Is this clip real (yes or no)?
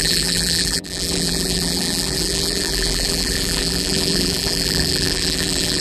no